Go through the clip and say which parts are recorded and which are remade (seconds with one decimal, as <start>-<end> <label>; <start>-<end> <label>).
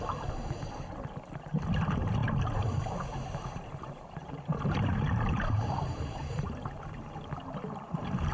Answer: 0.0-2.2 recorded; 2.2-7.0 remade; 7.0-8.3 recorded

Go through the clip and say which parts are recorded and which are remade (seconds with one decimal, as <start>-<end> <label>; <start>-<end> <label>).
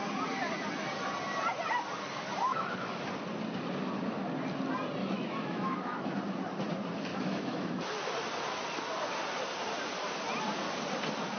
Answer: 0.0-2.5 recorded; 2.5-3.1 remade; 3.1-5.0 recorded; 5.0-6.2 remade; 6.2-7.1 recorded; 7.1-7.7 remade; 7.7-11.4 recorded